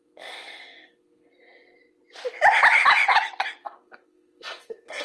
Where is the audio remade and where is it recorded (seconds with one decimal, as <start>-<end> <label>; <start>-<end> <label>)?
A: 0.0-1.3 remade; 1.3-3.6 recorded; 3.6-5.0 remade